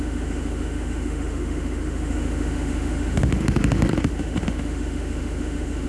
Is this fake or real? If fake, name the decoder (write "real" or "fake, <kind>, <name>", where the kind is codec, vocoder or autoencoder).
fake, autoencoder, DAC-VAE